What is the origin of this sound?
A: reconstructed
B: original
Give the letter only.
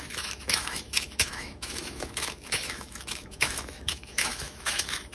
A